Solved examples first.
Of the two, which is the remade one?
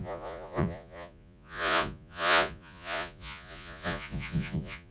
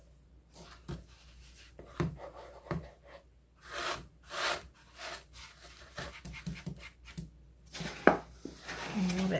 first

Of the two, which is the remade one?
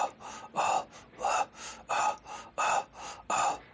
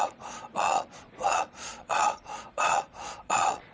second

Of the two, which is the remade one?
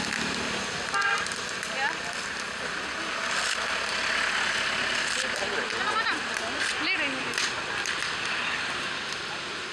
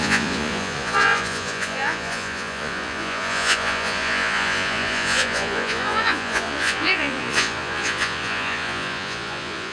second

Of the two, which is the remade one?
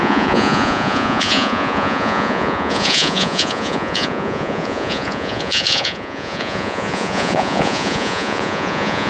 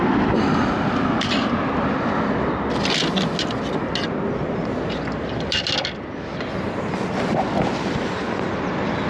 first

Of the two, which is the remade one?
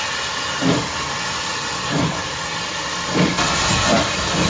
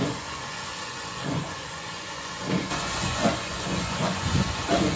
second